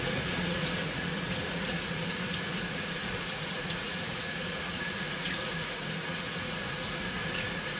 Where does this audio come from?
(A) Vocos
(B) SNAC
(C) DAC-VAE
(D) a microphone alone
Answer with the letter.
A